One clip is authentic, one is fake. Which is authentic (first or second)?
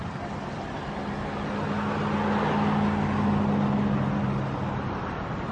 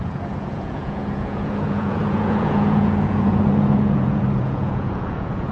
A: first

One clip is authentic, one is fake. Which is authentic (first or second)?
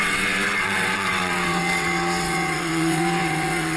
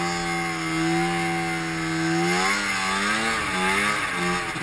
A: second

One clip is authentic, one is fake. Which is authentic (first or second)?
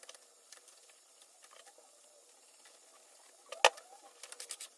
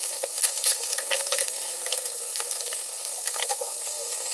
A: first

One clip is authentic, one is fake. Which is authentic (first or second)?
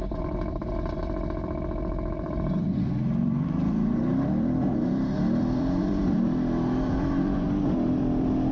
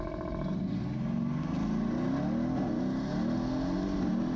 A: second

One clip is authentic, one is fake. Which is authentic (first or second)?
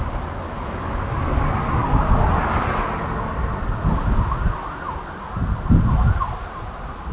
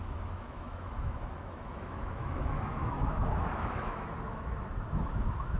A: first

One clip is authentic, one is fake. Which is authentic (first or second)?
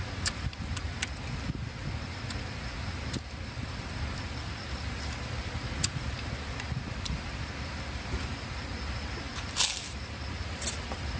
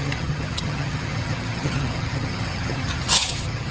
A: first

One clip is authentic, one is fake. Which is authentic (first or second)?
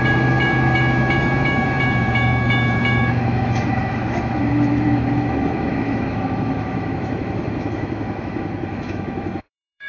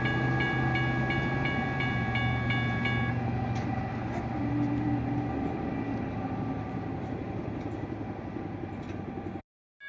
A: second